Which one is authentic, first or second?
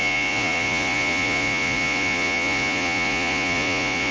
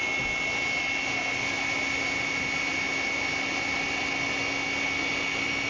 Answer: second